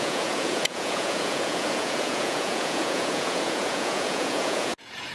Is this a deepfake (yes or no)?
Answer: yes